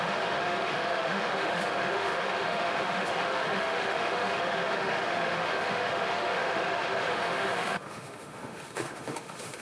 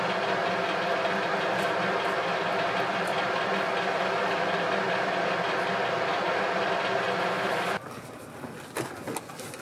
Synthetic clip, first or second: first